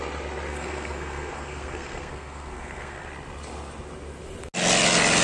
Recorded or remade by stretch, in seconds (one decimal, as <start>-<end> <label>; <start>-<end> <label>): 0.0-0.5 recorded; 0.5-3.1 remade; 3.1-5.2 recorded